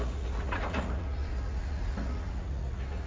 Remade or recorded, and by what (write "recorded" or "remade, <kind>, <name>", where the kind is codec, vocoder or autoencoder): remade, vocoder, Vocos